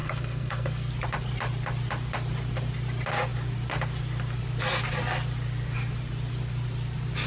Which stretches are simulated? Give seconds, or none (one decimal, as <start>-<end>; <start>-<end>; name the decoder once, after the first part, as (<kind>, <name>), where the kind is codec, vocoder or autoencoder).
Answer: 0.0-0.9 (codec, SNAC)